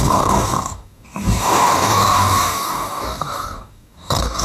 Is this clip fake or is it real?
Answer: fake